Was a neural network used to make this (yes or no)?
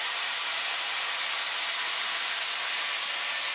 no